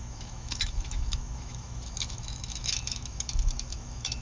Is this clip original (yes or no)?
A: no